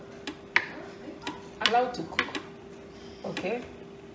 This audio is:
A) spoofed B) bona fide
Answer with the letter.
B